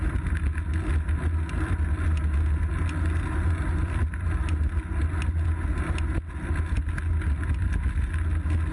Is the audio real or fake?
real